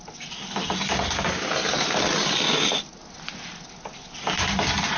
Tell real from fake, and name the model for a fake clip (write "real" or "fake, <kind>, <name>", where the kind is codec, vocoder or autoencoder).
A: real